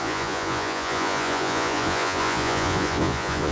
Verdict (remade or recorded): remade